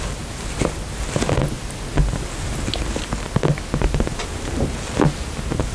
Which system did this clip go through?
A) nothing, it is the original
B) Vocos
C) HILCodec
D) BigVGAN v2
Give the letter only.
A